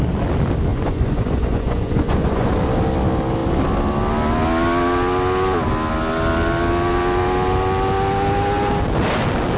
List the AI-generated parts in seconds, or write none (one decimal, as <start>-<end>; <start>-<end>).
0.7-2.5